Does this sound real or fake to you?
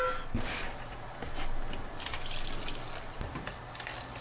real